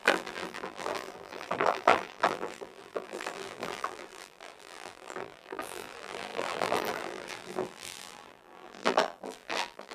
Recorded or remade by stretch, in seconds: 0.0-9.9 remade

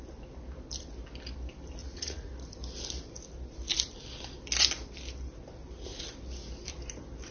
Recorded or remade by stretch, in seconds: 0.0-1.8 recorded; 1.8-2.3 remade; 2.3-7.3 recorded

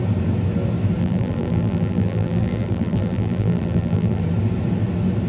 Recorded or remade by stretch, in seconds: 0.0-1.0 recorded; 1.0-4.2 remade; 4.2-5.3 recorded

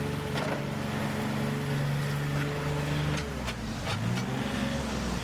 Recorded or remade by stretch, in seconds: 0.0-5.2 recorded

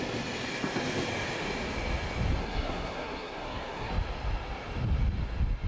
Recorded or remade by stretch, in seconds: 0.0-2.4 recorded; 2.4-3.9 remade; 3.9-5.7 recorded